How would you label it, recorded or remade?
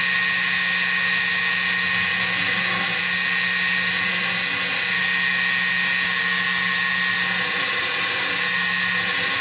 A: recorded